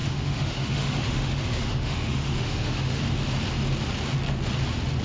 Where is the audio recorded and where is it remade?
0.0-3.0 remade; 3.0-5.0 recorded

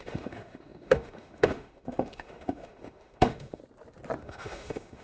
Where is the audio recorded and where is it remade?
0.0-3.6 remade; 3.6-4.2 recorded; 4.2-5.0 remade

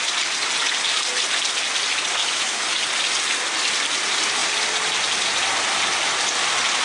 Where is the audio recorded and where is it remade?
0.0-2.2 recorded; 2.2-2.8 remade; 2.8-6.8 recorded